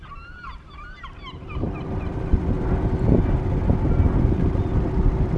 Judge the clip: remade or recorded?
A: recorded